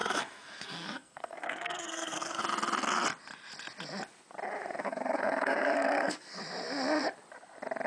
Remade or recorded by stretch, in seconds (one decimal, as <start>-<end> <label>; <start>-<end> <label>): 0.0-2.4 remade; 2.4-4.8 recorded; 4.8-6.4 remade; 6.4-7.9 recorded